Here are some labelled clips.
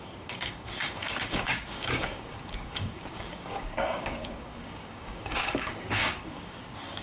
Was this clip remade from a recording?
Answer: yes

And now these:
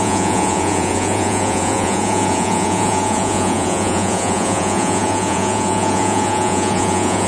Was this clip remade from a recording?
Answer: yes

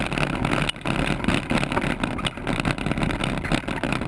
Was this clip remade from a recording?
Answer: no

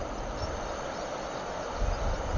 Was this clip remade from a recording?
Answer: no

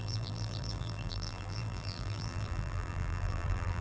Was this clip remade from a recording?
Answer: yes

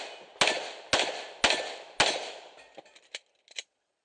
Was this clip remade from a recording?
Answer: no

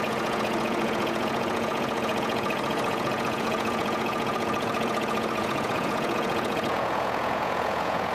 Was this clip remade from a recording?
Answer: yes